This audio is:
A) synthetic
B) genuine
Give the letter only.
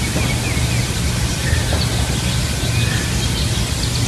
B